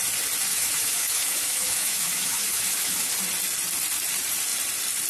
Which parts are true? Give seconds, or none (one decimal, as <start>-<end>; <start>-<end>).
0.0-0.5; 3.1-5.1